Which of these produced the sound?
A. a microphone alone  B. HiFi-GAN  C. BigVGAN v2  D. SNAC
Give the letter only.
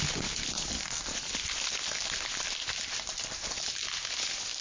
A